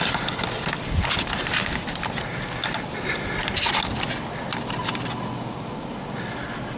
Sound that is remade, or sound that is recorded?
recorded